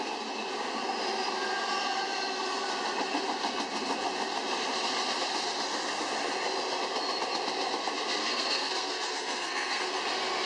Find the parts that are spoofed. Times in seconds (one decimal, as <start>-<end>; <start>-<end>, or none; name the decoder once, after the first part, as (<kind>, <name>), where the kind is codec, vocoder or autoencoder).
8.2-9.8 (codec, SNAC)